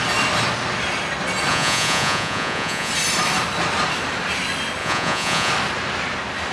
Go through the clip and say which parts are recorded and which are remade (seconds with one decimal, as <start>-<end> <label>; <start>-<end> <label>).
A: 0.0-1.5 recorded; 1.5-2.9 remade; 2.9-4.8 recorded; 4.8-5.5 remade; 5.5-6.5 recorded